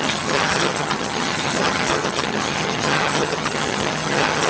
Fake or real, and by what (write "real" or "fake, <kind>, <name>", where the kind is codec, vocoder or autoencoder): fake, vocoder, HiFi-GAN